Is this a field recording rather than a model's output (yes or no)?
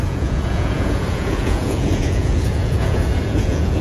no